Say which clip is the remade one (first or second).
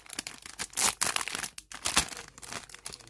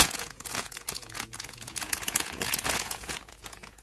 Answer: second